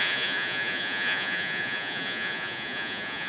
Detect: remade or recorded remade